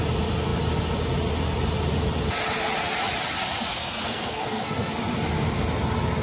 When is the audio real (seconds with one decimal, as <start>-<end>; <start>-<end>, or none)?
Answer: 0.0-3.7; 4.9-6.2